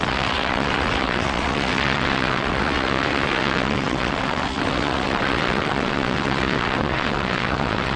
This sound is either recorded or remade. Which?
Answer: remade